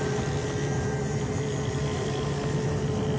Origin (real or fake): real